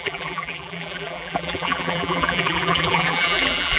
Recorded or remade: remade